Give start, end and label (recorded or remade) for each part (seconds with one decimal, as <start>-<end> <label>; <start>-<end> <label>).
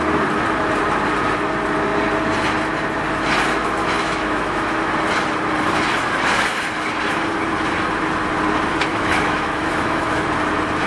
0.0-3.8 recorded; 3.8-4.9 remade; 4.9-8.9 recorded; 8.9-10.3 remade; 10.3-10.9 recorded